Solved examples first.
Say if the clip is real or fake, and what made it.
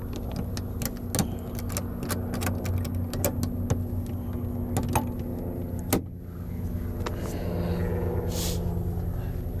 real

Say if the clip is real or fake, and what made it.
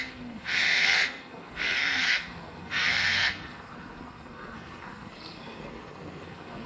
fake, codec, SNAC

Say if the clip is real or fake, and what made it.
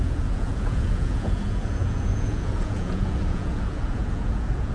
fake, vocoder, Vocos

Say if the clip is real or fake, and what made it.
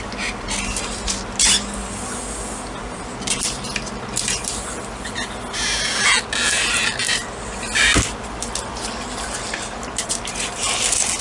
real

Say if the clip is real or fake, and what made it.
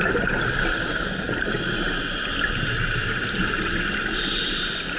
real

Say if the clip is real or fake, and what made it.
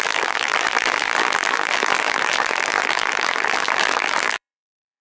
fake, vocoder, BigVGAN v2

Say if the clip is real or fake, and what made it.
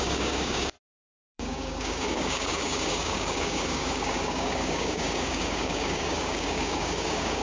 fake, codec, DAC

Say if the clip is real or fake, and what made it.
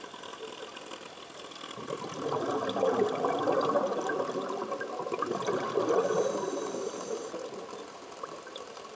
fake, vocoder, BigVGAN v2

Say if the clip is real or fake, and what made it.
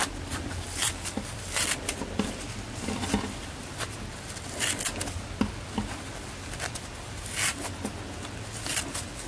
real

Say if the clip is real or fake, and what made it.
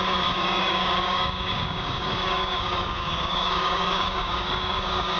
fake, codec, DAC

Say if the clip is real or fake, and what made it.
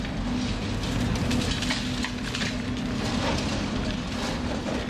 real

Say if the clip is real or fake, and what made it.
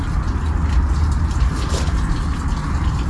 real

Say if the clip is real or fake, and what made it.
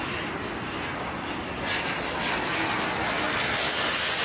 real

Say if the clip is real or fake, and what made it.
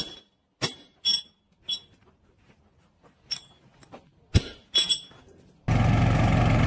real